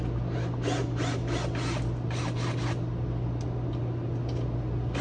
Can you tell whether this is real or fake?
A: real